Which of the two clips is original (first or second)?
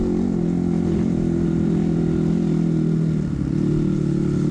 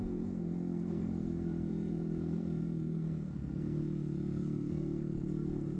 first